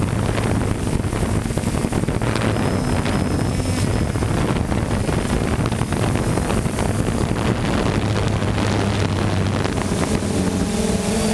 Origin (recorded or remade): recorded